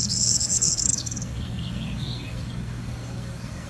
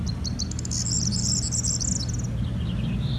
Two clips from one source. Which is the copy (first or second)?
first